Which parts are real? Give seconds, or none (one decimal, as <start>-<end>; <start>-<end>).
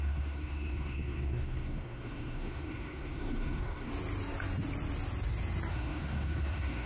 3.9-5.7